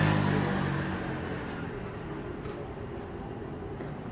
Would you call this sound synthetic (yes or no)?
no